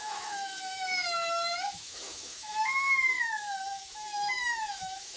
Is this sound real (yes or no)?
no